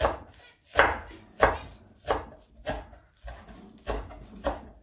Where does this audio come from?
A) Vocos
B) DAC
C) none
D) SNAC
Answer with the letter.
C